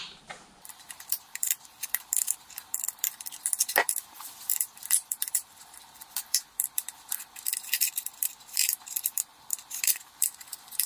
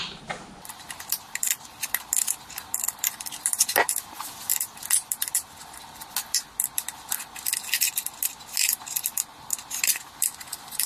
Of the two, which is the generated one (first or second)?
first